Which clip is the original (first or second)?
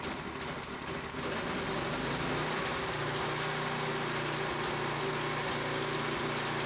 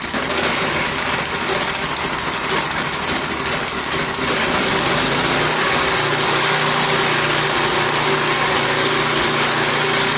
first